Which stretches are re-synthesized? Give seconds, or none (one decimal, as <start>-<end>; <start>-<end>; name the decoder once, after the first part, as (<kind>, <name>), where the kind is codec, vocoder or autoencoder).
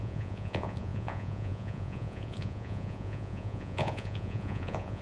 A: 0.0-5.0 (vocoder, Vocos)